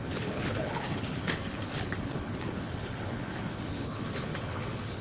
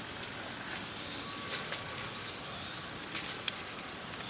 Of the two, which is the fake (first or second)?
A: first